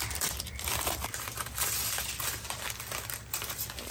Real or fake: fake